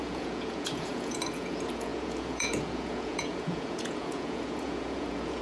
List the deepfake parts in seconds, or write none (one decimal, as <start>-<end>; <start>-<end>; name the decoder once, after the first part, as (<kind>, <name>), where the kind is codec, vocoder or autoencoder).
0.0-5.4 (vocoder, Vocos)